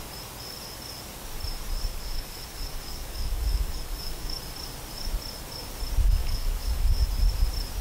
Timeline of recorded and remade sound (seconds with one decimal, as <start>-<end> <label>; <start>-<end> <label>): 0.0-1.9 recorded; 1.9-4.4 remade; 4.4-6.2 recorded; 6.2-7.1 remade; 7.1-7.8 recorded